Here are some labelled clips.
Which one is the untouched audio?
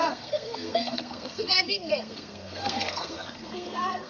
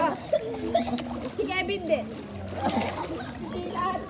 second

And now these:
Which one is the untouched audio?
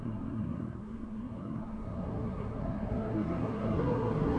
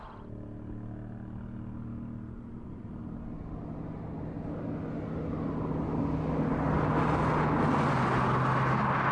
second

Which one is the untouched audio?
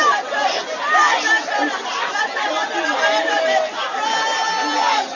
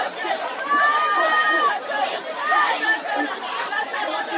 first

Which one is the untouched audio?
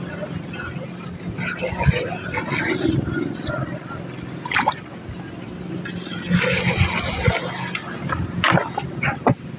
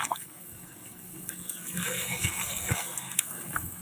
first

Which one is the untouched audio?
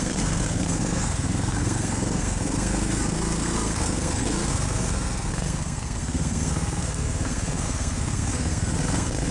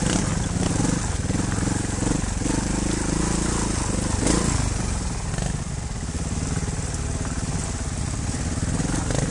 second